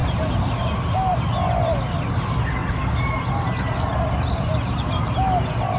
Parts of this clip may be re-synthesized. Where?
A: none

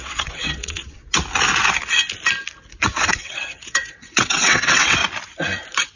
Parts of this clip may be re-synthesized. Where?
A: 0.0-1.0 (vocoder, WaveNeXt); 2.8-5.0

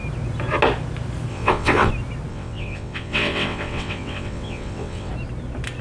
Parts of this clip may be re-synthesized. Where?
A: 1.3-1.9 (vocoder, WaveNeXt); 2.3-5.1

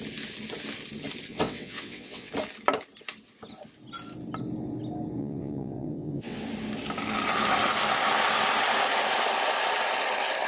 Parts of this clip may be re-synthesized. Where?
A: 1.3-2.3 (vocoder, WaveNeXt); 5.2-6.4